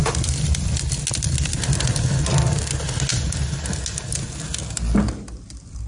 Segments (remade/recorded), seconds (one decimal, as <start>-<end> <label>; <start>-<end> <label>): 0.0-1.0 remade; 1.0-3.1 recorded; 3.1-3.8 remade; 3.8-5.9 recorded